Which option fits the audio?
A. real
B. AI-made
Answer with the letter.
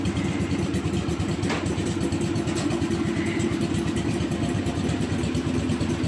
A